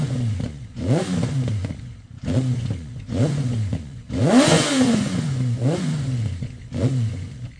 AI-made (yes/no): yes